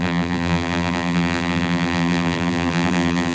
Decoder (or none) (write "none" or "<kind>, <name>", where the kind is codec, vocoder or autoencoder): vocoder, BigVGAN v2